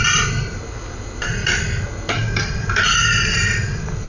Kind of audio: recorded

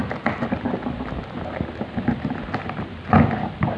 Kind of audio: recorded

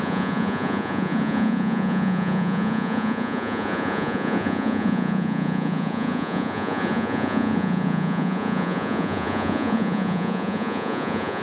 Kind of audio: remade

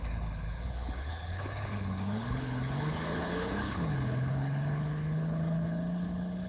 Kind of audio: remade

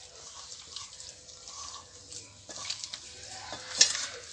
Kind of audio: recorded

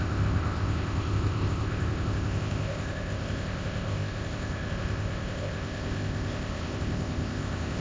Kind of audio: remade